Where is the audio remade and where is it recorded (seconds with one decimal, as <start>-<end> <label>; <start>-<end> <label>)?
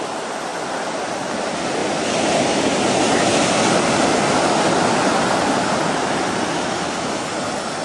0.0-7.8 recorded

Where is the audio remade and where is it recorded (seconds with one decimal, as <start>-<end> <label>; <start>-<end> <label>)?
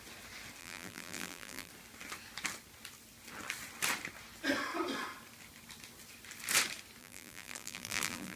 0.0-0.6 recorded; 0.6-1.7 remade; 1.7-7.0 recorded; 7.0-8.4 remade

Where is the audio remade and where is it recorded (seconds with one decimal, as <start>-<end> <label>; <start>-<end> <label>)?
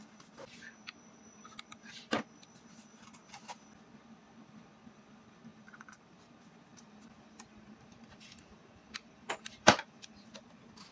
0.0-5.5 recorded; 5.5-6.3 remade; 6.3-6.7 recorded; 6.7-10.3 remade; 10.3-10.9 recorded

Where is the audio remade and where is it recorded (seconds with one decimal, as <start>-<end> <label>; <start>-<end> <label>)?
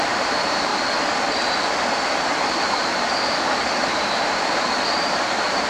0.0-0.7 remade; 0.7-2.2 recorded; 2.2-5.7 remade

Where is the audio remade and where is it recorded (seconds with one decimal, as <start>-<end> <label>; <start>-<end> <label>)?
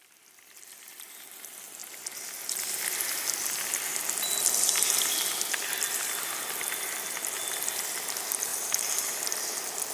0.0-9.9 recorded